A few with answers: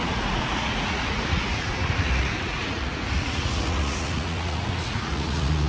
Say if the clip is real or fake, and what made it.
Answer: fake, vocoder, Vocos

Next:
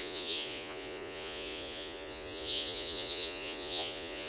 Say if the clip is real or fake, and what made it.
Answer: fake, vocoder, Vocos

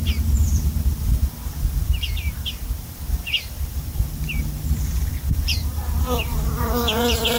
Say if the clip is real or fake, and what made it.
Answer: fake, vocoder, BigVGAN v2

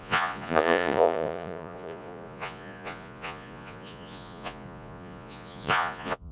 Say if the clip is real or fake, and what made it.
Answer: fake, vocoder, Vocos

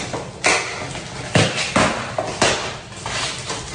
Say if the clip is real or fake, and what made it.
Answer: real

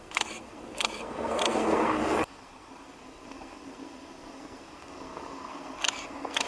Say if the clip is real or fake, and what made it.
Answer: fake, codec, SNAC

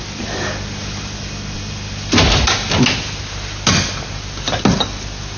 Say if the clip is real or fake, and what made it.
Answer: real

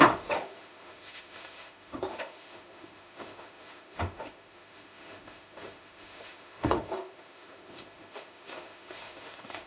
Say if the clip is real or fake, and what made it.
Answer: fake, autoencoder, DAC-VAE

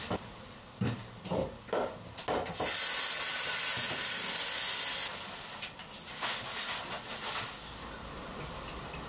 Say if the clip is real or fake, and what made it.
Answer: real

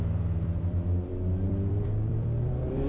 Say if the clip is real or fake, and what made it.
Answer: fake, vocoder, BigVGAN v2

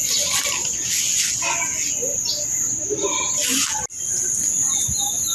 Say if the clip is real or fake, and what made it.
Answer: real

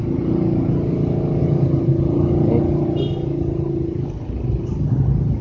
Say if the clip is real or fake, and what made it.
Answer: real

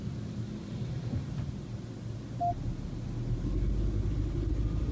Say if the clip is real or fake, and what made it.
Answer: real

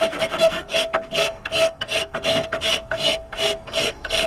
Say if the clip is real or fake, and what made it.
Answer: fake, codec, SNAC